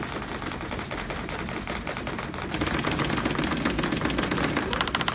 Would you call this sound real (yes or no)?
yes